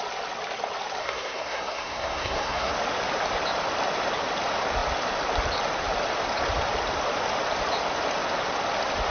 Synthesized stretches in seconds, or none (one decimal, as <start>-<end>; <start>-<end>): 1.0-2.7